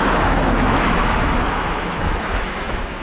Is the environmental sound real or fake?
fake